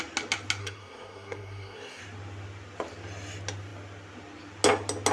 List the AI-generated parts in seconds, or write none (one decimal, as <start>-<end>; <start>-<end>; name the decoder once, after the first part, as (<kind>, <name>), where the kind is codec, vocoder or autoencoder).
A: 0.6-2.0 (codec, SNAC)